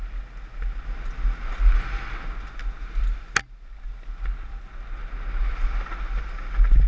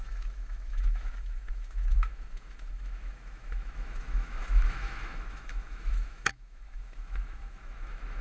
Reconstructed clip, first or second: second